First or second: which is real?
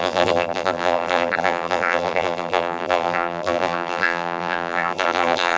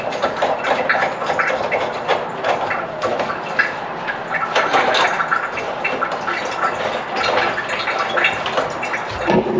second